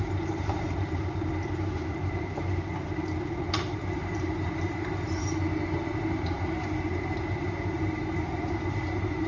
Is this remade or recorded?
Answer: remade